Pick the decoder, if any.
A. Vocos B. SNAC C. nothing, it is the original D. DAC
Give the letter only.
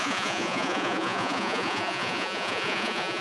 A